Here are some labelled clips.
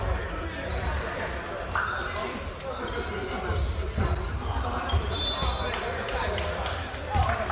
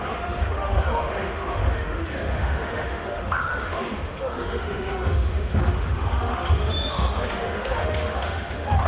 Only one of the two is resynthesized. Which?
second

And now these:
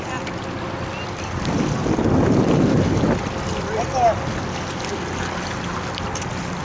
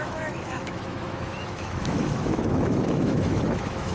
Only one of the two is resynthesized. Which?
second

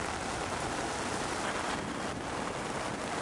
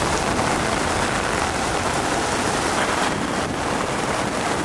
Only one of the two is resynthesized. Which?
second